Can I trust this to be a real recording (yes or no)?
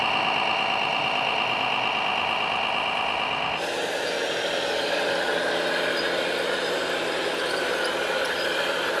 yes